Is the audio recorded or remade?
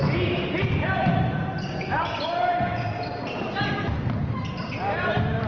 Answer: recorded